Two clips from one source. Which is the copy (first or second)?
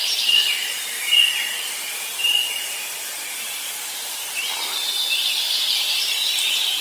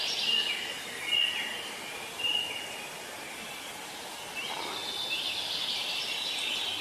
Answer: first